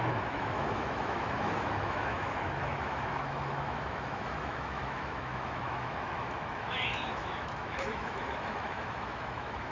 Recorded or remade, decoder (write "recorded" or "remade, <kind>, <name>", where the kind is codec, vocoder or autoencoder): remade, autoencoder, DAC-VAE